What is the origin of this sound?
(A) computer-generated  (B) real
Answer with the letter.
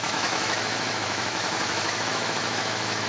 A